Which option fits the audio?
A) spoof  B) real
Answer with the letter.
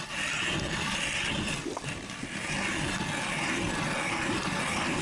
B